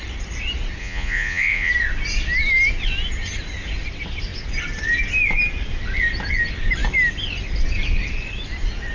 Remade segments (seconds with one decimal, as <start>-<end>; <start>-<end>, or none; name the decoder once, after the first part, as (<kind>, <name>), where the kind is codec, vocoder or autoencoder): 0.8-1.7 (vocoder, Vocos)